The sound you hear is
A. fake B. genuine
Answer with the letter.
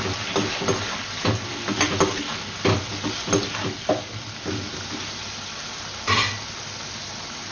B